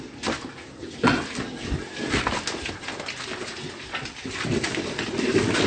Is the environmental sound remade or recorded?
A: recorded